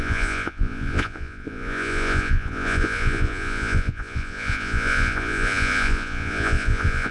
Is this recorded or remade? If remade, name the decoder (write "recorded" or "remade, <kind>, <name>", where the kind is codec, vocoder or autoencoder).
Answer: remade, vocoder, Vocos